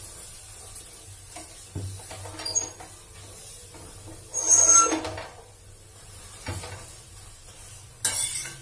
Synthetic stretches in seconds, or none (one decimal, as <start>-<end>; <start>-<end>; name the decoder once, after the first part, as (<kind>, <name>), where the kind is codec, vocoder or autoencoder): none